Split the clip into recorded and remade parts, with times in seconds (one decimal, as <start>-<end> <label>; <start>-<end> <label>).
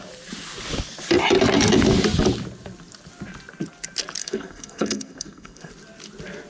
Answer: 0.0-4.2 recorded; 4.2-5.7 remade; 5.7-6.5 recorded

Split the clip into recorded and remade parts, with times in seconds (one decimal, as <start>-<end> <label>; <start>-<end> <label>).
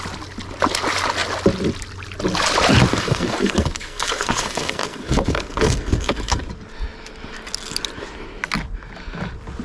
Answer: 0.0-2.9 recorded; 2.9-6.4 remade; 6.4-9.6 recorded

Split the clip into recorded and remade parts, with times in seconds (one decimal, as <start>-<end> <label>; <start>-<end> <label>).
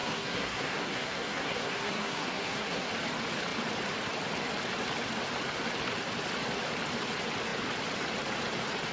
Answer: 0.0-2.9 remade; 2.9-8.9 recorded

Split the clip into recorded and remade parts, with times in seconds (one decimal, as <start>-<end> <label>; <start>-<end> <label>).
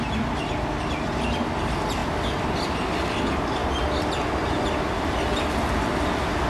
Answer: 0.0-6.5 recorded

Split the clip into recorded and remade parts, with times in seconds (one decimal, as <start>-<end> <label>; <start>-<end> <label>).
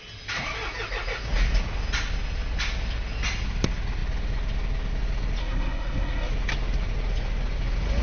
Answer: 0.0-5.4 recorded; 5.4-6.3 remade; 6.3-8.0 recorded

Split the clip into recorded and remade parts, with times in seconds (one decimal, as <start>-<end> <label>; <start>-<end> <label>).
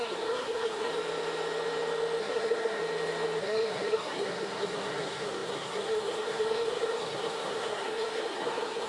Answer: 0.0-0.9 remade; 0.9-2.2 recorded; 2.2-2.8 remade; 2.8-3.4 recorded; 3.4-8.9 remade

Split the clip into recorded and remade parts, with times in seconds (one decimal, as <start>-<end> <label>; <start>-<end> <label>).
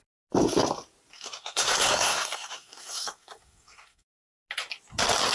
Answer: 0.0-1.1 recorded; 1.1-4.3 remade; 4.3-5.3 recorded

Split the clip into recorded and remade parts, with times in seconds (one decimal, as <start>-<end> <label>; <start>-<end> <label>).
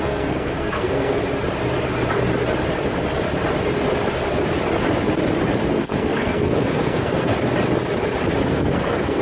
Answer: 0.0-1.2 remade; 1.2-5.7 recorded; 5.7-7.3 remade; 7.3-8.5 recorded; 8.5-9.2 remade